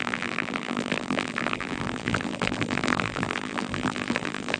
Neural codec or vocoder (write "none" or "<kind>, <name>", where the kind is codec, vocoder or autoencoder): vocoder, BigVGAN v2